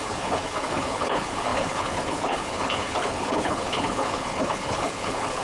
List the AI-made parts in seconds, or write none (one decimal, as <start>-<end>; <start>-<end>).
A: 0.0-5.4